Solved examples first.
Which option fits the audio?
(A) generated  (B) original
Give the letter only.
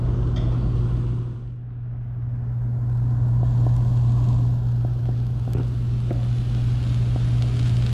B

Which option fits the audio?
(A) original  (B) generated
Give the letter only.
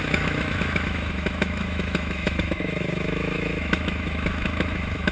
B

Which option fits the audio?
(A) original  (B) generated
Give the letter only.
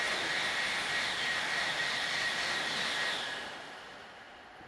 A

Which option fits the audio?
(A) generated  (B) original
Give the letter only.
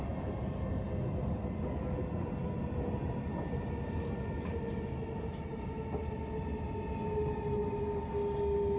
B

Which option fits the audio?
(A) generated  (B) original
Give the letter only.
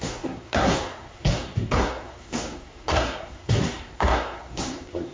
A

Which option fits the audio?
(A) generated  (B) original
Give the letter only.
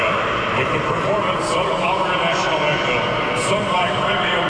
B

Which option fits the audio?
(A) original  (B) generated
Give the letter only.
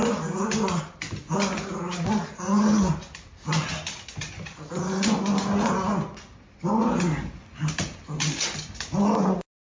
A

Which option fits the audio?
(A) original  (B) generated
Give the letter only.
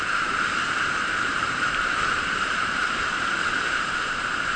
B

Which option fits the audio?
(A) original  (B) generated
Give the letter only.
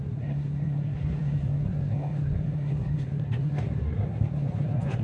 B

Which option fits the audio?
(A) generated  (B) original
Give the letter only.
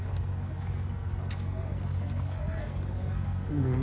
A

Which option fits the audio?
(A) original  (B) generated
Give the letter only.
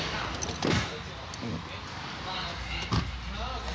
A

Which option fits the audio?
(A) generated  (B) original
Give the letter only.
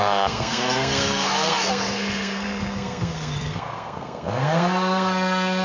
A